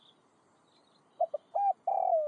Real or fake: real